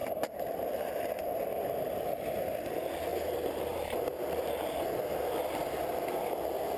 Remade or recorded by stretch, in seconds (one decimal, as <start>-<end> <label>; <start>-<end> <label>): 0.0-0.9 remade; 0.9-3.1 recorded; 3.1-4.8 remade; 4.8-6.8 recorded